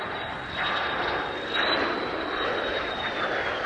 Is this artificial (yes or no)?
no